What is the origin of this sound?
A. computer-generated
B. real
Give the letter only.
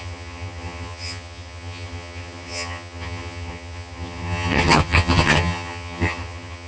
A